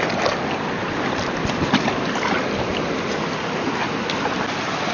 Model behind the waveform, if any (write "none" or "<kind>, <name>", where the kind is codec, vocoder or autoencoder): none